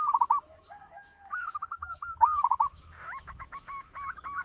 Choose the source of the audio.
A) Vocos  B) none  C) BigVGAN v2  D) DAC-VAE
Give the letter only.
D